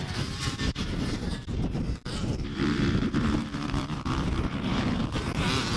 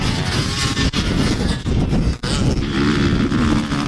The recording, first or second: second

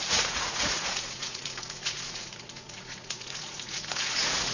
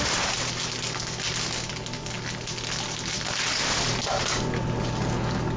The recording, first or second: second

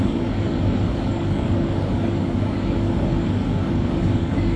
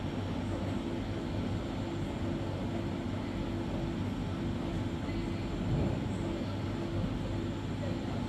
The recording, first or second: second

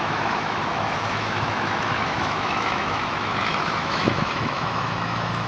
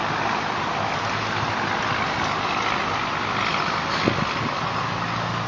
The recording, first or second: second